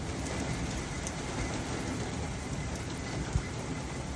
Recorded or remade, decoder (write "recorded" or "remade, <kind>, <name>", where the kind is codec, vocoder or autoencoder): recorded